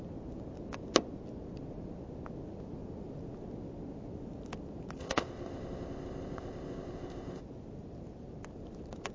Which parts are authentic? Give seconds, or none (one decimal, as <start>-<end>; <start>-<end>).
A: 0.0-5.0; 7.4-9.1